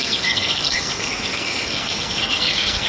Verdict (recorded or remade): remade